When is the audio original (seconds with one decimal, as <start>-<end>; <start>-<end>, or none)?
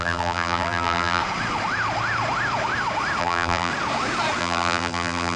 1.2-3.2; 3.7-4.4